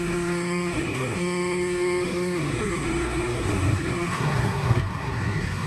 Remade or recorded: remade